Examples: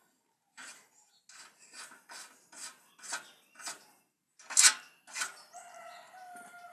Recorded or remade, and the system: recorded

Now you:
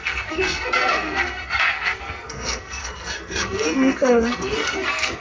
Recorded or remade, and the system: remade, codec, SNAC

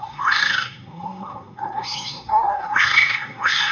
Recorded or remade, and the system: remade, codec, SNAC